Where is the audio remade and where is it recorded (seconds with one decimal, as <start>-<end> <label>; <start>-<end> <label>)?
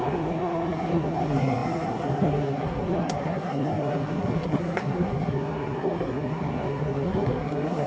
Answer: 0.0-7.9 remade